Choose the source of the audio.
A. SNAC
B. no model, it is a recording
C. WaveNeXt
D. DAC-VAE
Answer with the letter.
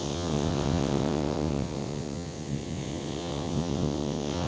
C